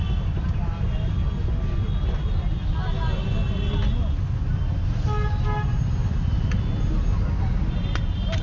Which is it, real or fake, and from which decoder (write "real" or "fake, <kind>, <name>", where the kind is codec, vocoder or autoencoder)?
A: real